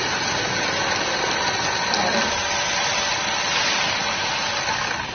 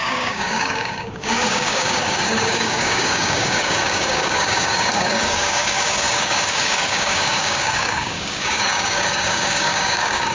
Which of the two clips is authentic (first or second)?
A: first